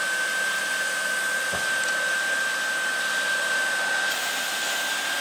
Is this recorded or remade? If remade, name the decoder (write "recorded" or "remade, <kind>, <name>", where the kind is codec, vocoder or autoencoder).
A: recorded